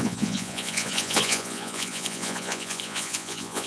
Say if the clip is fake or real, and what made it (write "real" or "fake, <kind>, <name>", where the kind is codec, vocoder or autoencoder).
fake, vocoder, Vocos